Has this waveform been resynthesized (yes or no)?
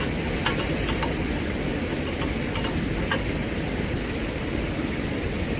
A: no